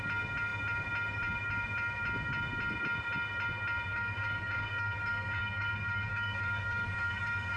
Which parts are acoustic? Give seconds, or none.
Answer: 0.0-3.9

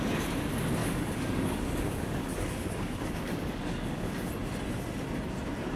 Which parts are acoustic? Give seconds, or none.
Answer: 0.0-0.8; 4.3-5.8

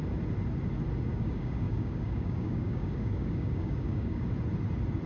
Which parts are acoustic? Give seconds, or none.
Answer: 0.0-1.1; 4.2-5.1

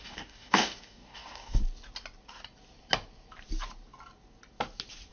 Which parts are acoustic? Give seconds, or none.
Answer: 1.6-5.1

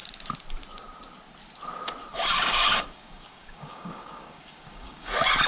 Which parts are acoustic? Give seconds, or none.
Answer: 0.0-2.3; 5.1-5.5